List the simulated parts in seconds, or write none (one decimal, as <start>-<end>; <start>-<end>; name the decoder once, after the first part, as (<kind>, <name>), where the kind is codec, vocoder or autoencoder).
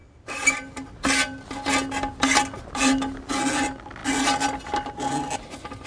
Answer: none